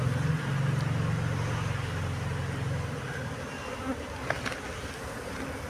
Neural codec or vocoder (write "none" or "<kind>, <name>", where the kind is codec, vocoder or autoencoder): none